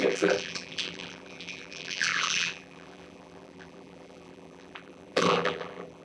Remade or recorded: remade